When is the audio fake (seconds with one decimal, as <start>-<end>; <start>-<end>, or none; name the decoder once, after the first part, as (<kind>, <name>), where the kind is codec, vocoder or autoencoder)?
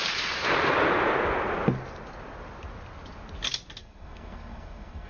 3.8-5.1 (codec, SNAC)